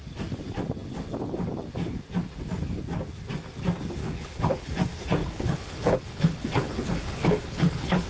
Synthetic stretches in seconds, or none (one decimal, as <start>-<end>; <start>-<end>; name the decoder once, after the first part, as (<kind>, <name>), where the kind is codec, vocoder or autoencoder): 4.0-4.7 (codec, HILCodec); 5.2-8.1